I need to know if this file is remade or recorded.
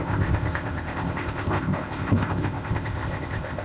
remade